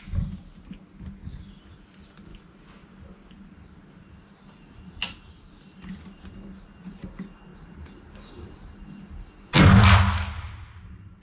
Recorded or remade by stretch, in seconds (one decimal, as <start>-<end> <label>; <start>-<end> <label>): 0.0-11.2 recorded

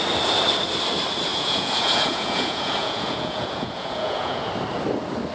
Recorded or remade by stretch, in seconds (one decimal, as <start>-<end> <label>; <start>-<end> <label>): 0.0-1.3 recorded; 1.3-4.5 remade; 4.5-5.3 recorded

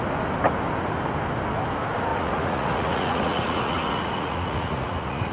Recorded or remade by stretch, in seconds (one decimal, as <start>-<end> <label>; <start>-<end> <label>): 0.0-2.1 recorded; 2.1-5.3 remade